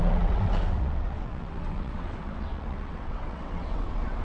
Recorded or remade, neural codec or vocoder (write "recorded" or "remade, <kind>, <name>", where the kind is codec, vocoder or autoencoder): remade, vocoder, WaveNeXt